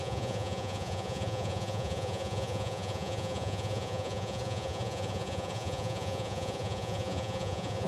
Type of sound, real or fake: fake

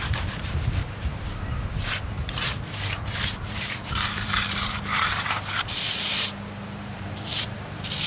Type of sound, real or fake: fake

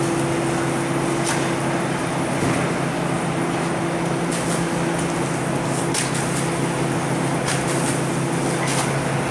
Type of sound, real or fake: real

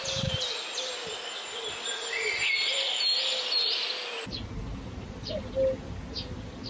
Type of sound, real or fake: real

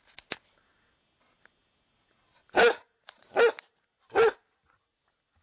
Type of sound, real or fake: real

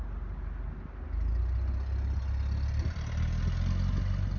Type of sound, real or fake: real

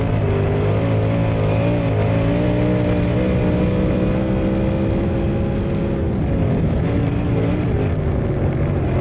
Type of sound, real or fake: real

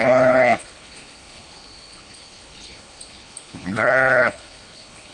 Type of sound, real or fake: fake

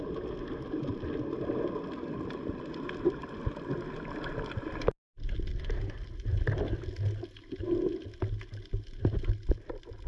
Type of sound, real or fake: real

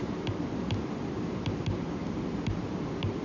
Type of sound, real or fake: real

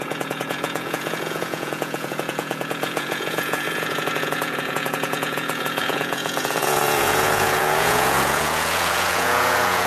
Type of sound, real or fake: fake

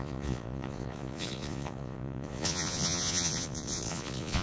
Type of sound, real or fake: fake